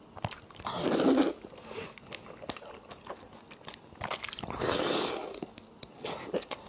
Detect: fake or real real